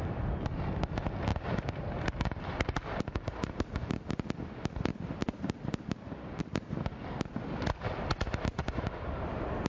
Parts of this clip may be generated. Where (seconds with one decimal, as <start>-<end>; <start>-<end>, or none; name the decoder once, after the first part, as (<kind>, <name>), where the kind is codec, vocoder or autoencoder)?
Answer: 0.0-0.5 (vocoder, BigVGAN v2); 1.3-4.1; 5.2-6.4